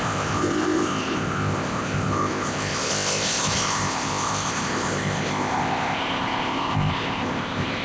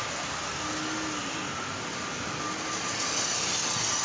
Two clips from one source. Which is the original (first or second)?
second